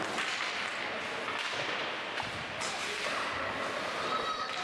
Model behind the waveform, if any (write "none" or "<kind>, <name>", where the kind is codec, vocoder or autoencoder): none